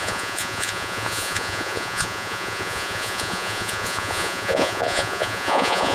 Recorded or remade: remade